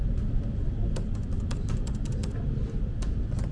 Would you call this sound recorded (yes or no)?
no